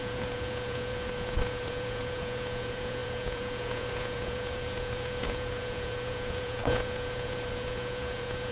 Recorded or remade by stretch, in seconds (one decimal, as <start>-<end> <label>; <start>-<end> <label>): 0.0-8.5 remade